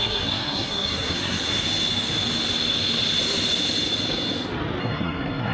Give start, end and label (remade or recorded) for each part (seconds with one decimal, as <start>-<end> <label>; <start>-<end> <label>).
0.0-1.5 remade; 1.5-4.8 recorded; 4.8-5.5 remade